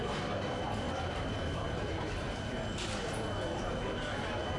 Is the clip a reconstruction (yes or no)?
no